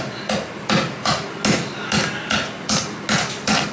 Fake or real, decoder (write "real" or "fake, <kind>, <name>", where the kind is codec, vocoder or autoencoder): real